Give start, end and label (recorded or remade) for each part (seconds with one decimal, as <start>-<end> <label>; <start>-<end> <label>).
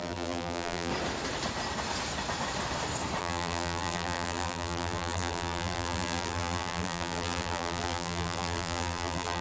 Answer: 0.0-0.9 remade; 0.9-3.2 recorded; 3.2-9.4 remade